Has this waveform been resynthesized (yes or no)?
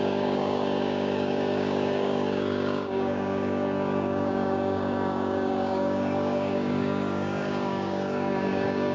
yes